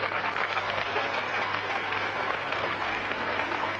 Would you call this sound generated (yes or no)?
yes